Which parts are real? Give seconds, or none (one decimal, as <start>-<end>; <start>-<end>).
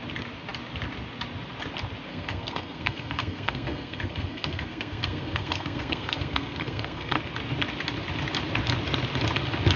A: 0.0-2.1; 7.2-9.8